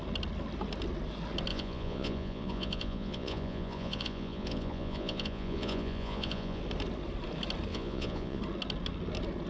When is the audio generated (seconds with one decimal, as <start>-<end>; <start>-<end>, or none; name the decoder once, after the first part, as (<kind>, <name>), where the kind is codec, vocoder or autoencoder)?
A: 1.5-6.6 (vocoder, Vocos); 7.7-8.4